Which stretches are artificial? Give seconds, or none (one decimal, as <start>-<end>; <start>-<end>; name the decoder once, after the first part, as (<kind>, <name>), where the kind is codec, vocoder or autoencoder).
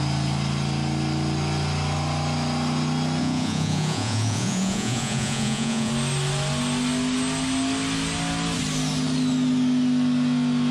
3.2-5.9 (vocoder, Vocos)